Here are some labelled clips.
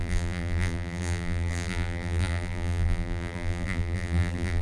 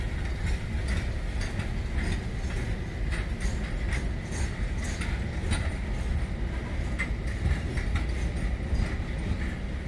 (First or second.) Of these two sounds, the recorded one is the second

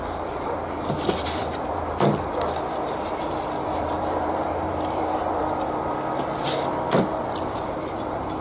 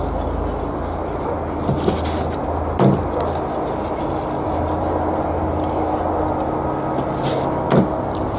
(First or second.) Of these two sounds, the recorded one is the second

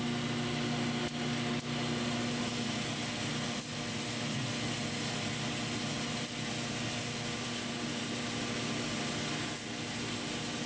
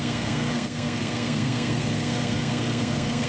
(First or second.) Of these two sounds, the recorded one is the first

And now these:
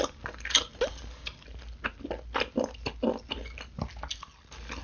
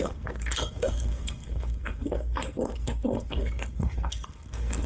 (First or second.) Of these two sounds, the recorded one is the first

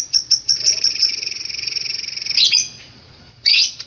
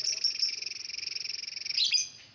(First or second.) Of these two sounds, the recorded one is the second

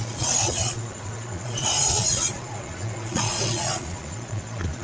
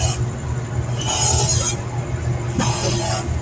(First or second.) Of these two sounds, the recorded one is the second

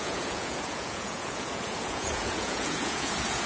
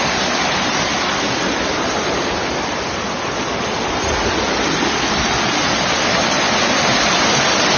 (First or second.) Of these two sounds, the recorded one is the second